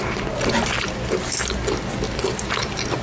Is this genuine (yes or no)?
yes